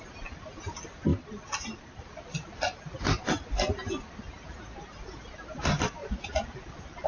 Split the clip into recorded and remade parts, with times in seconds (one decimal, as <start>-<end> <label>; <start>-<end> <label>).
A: 0.0-7.1 recorded